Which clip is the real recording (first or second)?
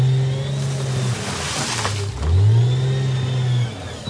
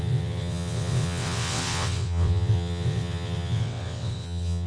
first